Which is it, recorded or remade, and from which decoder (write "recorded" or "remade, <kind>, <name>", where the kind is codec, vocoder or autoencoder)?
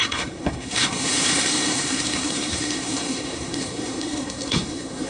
remade, codec, SNAC